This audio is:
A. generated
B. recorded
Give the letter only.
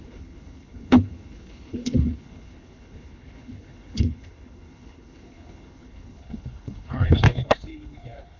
A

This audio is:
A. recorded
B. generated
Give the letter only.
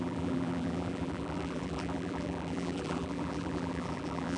B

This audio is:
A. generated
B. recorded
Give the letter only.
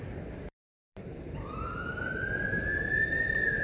A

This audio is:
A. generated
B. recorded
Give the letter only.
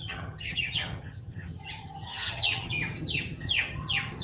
A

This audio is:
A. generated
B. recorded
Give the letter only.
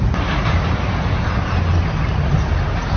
B